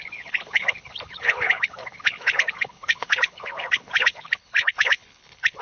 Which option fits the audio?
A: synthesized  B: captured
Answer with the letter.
A